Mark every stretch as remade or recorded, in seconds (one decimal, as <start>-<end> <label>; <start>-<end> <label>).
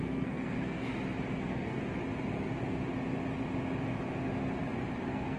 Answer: 0.0-0.9 remade; 0.9-1.4 recorded; 1.4-1.8 remade; 1.8-5.0 recorded; 5.0-5.4 remade